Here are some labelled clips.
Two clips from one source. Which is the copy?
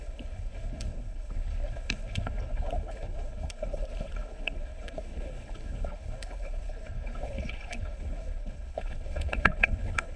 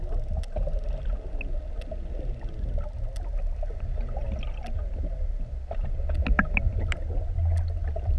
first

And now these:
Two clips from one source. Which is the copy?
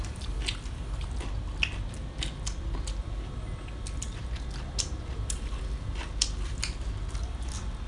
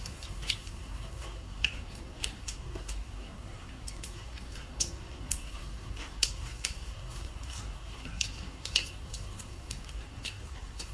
second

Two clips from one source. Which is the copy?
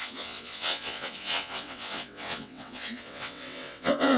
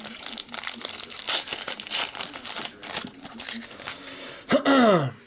first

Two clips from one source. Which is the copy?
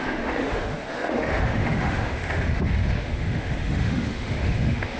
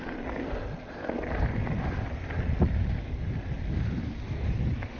first